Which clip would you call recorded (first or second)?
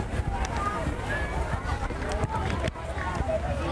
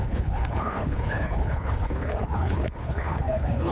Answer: first